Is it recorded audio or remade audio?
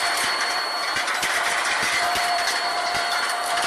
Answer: remade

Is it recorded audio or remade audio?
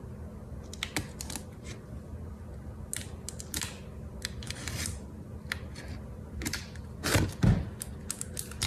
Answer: recorded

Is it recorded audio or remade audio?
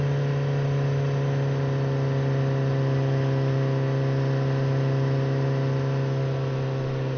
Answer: recorded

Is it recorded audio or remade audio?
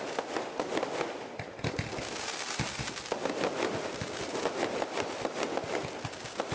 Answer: recorded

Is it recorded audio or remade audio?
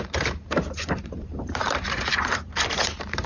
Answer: remade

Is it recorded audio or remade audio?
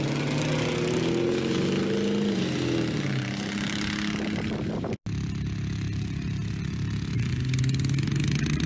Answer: recorded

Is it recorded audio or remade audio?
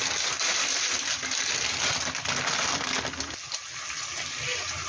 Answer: recorded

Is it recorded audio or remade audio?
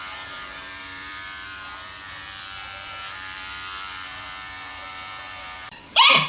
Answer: remade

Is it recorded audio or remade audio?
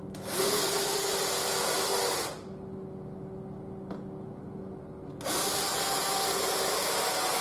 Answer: recorded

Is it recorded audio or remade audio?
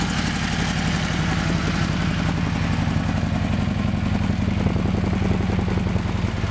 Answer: recorded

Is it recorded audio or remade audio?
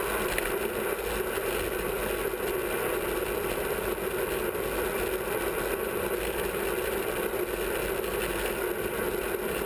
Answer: recorded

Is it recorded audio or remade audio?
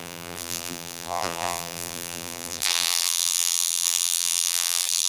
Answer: remade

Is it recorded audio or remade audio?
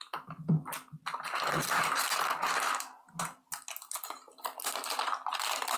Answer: recorded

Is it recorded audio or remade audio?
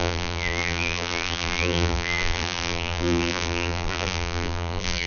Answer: remade